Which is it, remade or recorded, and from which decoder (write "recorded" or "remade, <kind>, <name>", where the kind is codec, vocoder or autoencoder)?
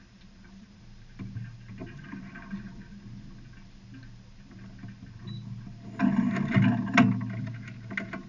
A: recorded